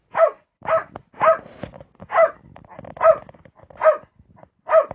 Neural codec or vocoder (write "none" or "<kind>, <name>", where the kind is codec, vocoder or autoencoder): none